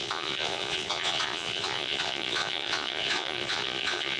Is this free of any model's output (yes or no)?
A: no